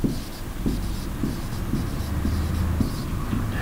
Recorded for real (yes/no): yes